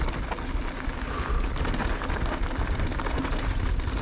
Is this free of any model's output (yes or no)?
yes